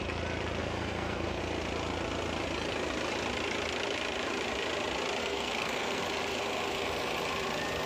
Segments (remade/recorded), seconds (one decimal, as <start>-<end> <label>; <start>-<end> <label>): 0.0-0.6 recorded; 0.6-1.4 remade; 1.4-5.2 recorded; 5.2-6.0 remade; 6.0-7.9 recorded